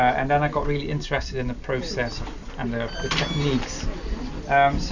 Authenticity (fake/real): real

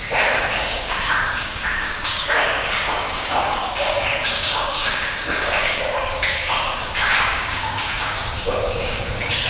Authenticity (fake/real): fake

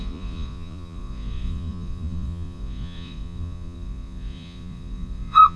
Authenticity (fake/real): fake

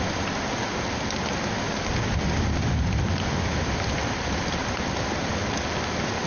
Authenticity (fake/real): real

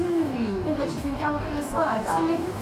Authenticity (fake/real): fake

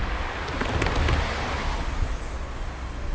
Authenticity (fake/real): real